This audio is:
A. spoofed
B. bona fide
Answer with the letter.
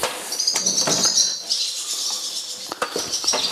A